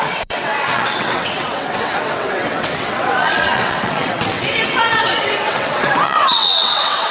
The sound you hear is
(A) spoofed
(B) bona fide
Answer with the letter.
A